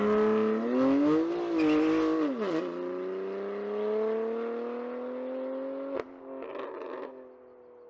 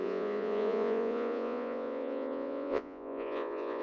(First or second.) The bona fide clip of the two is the first